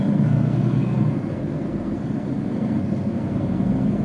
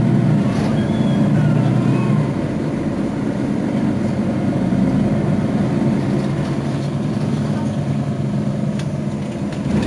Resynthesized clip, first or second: first